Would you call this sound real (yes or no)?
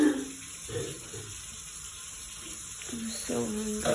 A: yes